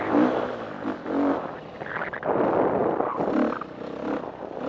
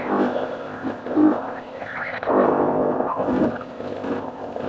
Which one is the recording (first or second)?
first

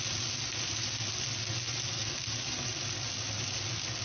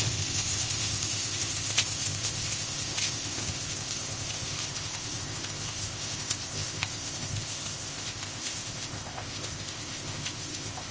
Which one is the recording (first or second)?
first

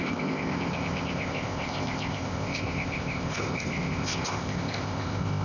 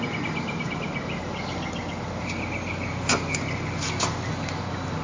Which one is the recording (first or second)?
second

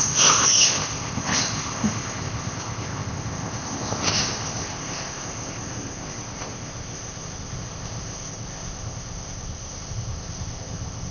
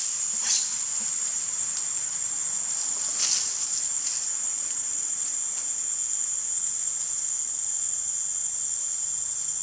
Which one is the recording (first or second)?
second